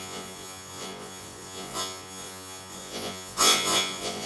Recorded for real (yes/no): no